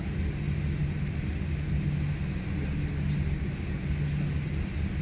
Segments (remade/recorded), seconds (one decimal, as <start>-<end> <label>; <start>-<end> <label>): 0.0-5.0 recorded